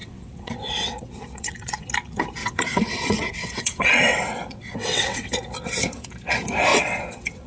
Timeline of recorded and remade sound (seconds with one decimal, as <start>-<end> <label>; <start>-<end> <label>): 0.0-1.9 remade; 1.9-2.4 recorded; 2.4-5.3 remade; 5.3-6.7 recorded; 6.7-7.5 remade

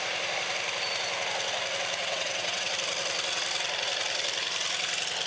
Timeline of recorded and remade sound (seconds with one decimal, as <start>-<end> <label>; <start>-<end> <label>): 0.0-2.0 recorded; 2.0-2.7 remade; 2.7-5.3 recorded

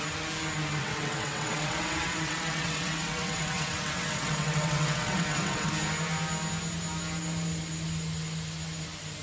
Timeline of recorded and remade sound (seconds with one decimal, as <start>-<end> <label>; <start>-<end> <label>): 0.0-0.8 recorded; 0.8-5.7 remade; 5.7-9.2 recorded

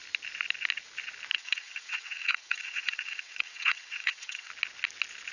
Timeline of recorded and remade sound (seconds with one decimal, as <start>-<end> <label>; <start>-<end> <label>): 0.0-1.3 recorded; 1.3-4.5 remade; 4.5-5.3 recorded

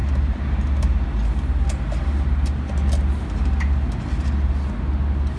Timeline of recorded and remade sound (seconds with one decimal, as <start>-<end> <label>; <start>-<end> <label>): 0.0-5.4 recorded